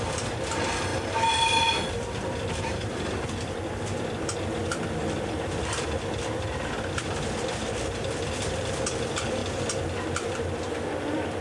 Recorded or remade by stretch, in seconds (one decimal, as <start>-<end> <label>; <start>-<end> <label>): 0.0-0.9 remade; 0.9-2.5 recorded; 2.5-9.4 remade; 9.4-11.0 recorded; 11.0-11.4 remade